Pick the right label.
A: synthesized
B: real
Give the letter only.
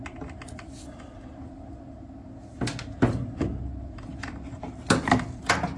B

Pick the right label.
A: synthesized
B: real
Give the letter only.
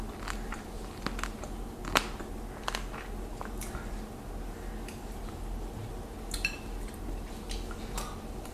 B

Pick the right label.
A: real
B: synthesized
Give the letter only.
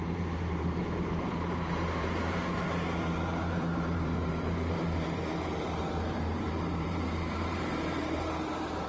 B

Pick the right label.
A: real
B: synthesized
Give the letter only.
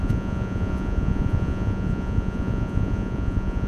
B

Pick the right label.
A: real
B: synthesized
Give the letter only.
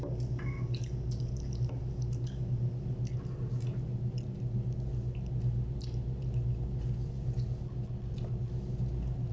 A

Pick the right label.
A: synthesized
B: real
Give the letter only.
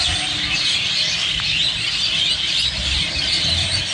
B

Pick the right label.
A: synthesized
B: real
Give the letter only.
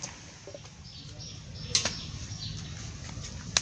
B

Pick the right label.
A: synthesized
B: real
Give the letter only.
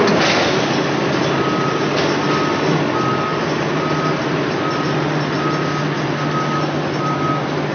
B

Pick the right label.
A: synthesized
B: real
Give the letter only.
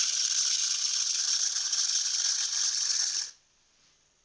B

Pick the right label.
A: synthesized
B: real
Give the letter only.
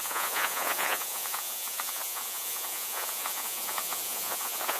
A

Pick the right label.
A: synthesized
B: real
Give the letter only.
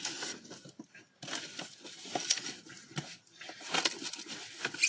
B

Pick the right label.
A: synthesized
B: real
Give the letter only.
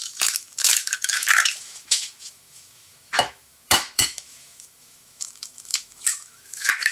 A